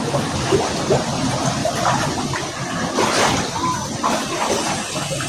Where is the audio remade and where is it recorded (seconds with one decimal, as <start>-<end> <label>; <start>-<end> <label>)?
0.0-1.6 recorded; 1.6-2.2 remade; 2.2-5.3 recorded